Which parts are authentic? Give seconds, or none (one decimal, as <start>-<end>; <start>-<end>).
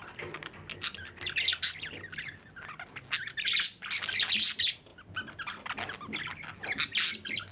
0.0-7.5